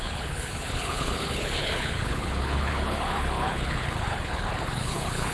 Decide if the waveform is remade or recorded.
remade